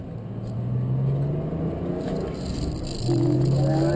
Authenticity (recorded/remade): recorded